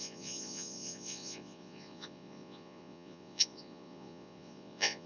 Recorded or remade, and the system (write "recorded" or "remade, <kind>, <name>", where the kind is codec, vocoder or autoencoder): remade, vocoder, Vocos